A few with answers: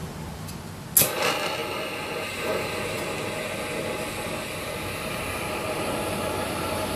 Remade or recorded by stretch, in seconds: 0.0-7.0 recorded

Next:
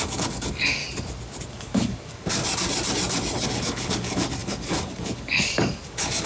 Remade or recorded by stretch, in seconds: 0.0-0.8 remade; 0.8-1.5 recorded; 1.5-2.4 remade; 2.4-3.5 recorded; 3.5-6.3 remade

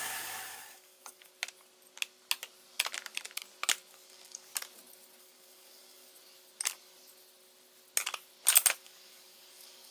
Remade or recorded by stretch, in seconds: 0.0-1.3 remade; 1.3-3.9 recorded; 3.9-4.5 remade; 4.5-5.2 recorded; 5.2-6.1 remade; 6.1-8.8 recorded; 8.8-9.9 remade

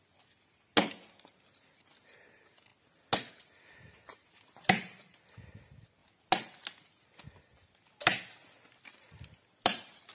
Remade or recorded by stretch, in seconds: 0.0-10.1 recorded

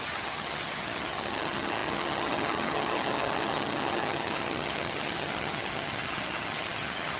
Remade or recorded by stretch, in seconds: 0.0-7.2 remade

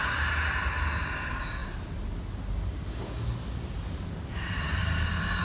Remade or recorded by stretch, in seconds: 0.0-5.4 recorded

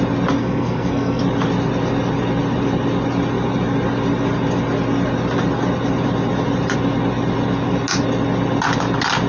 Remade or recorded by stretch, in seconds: 0.0-0.4 recorded; 0.4-1.2 remade; 1.2-9.3 recorded

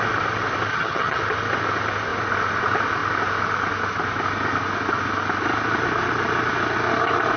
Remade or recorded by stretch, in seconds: 0.0-0.7 recorded; 0.7-1.2 remade; 1.2-7.4 recorded